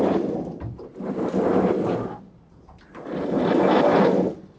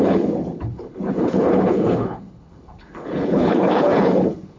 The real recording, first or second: first